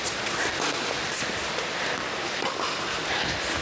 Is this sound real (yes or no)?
yes